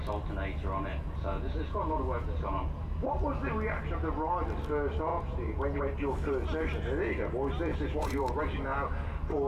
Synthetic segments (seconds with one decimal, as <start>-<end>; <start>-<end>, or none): 0.9-3.1; 5.1-5.8; 7.7-8.4